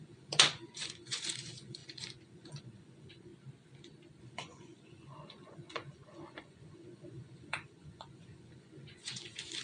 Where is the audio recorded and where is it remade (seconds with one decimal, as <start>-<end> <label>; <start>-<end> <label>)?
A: 0.0-3.3 remade; 3.3-4.2 recorded; 4.2-9.6 remade